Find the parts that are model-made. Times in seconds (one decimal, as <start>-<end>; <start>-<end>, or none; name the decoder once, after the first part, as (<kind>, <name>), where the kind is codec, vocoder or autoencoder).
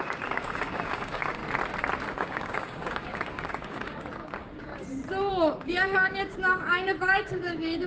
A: 0.0-1.4 (codec, DAC); 2.1-4.7; 5.3-7.9